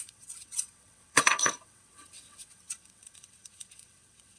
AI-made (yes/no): yes